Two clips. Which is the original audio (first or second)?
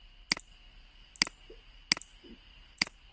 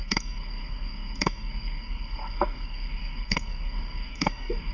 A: first